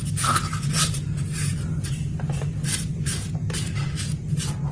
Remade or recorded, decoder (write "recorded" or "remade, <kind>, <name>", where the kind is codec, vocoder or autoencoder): recorded